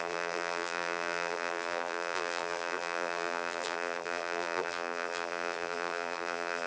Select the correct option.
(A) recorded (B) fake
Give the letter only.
B